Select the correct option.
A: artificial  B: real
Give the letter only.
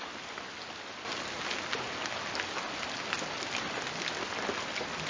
B